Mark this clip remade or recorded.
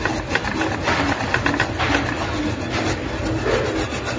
recorded